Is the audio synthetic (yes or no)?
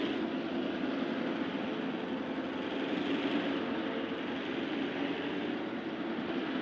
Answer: no